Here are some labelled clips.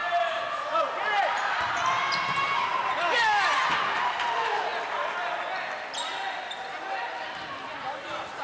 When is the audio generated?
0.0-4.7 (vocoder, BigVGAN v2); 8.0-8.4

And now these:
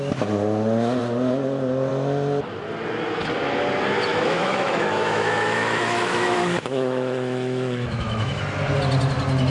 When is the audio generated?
4.1-8.4 (autoencoder, DAC-VAE)